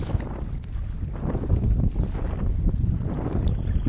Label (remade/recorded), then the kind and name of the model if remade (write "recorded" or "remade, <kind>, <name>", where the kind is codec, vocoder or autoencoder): recorded